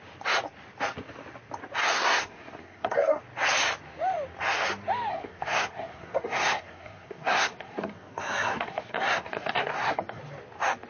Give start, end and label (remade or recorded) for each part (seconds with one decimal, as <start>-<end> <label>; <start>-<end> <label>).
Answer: 0.0-1.8 recorded; 1.8-3.2 remade; 3.2-5.1 recorded; 5.1-10.2 remade; 10.2-10.9 recorded